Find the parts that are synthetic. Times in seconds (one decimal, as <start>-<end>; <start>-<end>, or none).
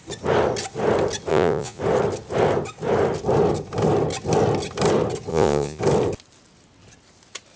1.3-1.8; 5.3-5.8